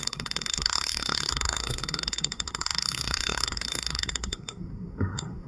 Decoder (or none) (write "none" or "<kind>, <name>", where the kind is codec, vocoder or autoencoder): codec, SNAC